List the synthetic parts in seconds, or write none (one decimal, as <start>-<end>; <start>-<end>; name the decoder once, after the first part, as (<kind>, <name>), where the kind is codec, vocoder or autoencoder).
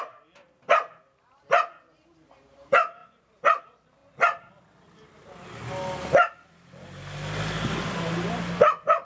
none